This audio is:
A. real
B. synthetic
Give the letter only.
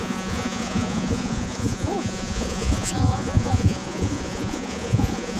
B